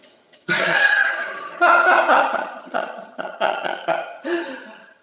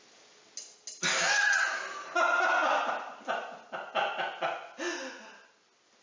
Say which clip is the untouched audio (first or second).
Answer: second